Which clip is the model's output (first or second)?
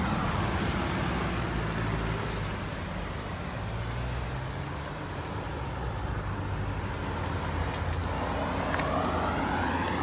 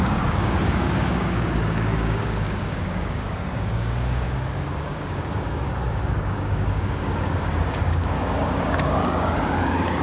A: second